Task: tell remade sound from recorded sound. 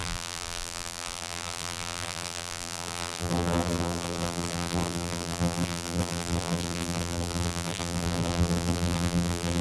remade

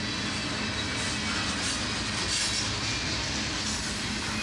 recorded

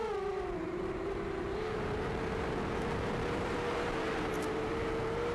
remade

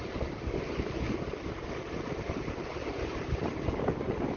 remade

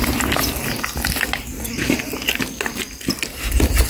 recorded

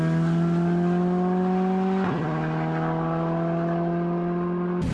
recorded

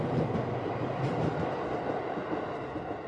recorded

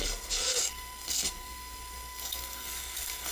remade